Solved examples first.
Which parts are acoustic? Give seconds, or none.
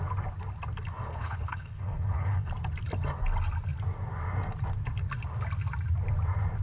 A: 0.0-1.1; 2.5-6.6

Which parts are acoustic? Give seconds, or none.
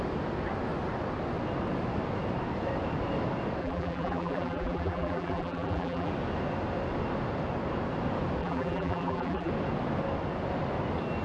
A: 0.0-3.6; 6.1-8.4; 9.5-11.2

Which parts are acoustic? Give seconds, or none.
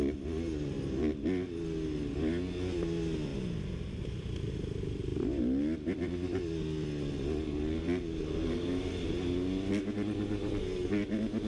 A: 0.0-11.5